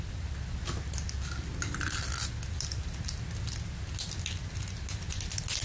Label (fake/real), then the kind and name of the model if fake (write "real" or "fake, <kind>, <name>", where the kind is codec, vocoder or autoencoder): real